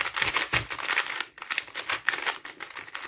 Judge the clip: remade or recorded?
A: recorded